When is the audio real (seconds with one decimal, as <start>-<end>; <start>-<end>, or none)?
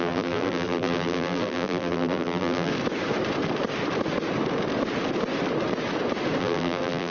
2.7-6.4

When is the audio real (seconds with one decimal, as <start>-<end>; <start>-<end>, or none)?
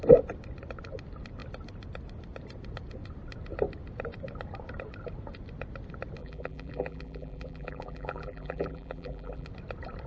0.0-6.2; 9.5-10.1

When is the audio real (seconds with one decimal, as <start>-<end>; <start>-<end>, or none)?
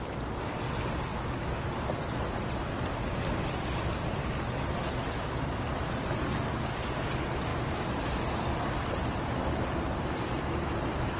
0.0-1.1; 1.6-11.2